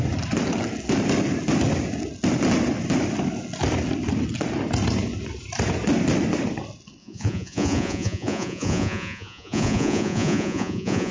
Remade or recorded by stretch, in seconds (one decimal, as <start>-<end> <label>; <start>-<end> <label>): 0.0-7.0 recorded; 7.0-11.1 remade